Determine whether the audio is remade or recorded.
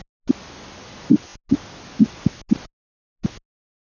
recorded